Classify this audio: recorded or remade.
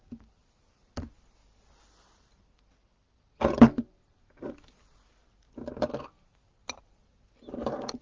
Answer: recorded